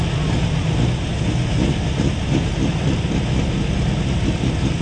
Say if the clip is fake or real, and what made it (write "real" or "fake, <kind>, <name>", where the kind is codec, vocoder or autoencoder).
real